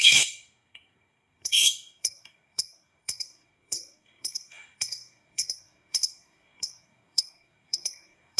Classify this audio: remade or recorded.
remade